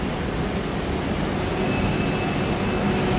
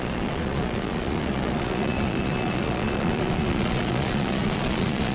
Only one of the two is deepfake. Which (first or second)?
second